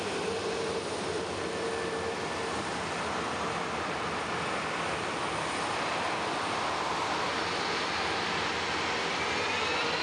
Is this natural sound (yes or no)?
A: yes